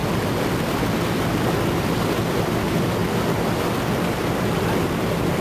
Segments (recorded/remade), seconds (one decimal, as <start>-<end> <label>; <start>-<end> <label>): 0.0-0.7 recorded; 0.7-5.4 remade